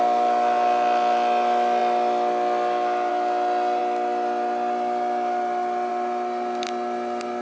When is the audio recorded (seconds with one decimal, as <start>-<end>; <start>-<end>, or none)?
0.0-7.4